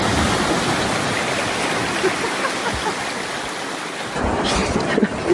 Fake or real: real